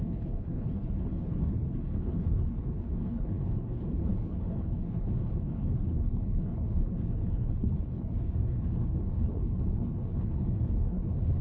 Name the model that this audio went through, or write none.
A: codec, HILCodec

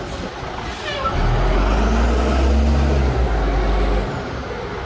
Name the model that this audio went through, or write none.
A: none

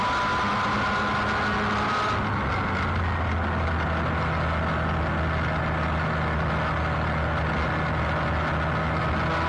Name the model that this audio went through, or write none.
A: none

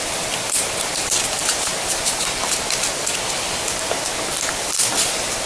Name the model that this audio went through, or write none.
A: none